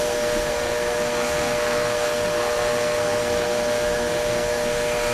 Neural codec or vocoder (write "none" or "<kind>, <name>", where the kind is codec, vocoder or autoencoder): codec, SNAC